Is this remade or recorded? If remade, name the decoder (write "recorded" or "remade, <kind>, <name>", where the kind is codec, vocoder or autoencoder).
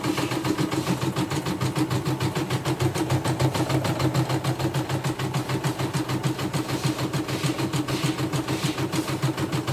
recorded